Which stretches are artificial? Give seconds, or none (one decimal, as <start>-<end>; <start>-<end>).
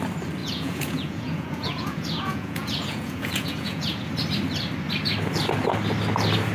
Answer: 0.4-4.1